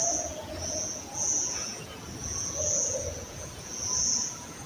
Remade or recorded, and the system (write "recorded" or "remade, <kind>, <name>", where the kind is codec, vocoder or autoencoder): remade, vocoder, Vocos